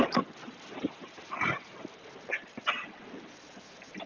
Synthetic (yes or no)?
no